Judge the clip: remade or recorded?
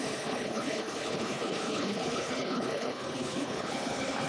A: remade